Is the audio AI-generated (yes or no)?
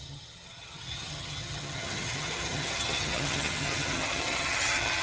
yes